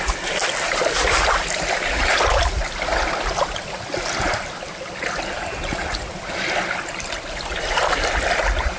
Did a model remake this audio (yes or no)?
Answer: no